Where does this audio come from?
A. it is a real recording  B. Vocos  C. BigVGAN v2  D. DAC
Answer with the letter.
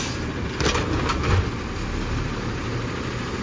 A